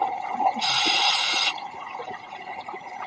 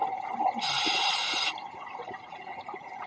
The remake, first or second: first